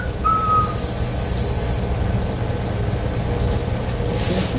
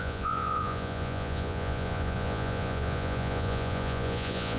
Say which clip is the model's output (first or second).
second